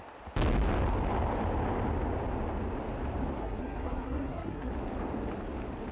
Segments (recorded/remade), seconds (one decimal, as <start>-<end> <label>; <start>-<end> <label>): 0.0-3.4 recorded; 3.4-4.7 remade; 4.7-5.9 recorded